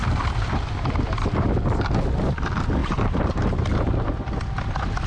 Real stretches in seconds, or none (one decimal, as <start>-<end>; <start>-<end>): 1.5-2.8; 3.6-5.1